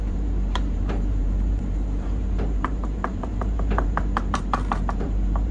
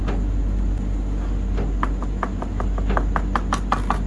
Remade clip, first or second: first